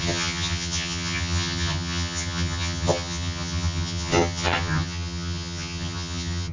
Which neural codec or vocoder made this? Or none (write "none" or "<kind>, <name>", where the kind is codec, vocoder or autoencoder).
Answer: vocoder, HiFi-GAN